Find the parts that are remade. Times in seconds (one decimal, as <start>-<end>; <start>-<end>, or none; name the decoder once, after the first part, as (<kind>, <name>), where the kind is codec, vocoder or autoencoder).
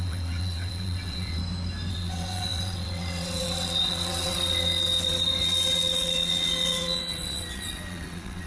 0.0-1.4 (vocoder, WaveNeXt); 1.9-8.5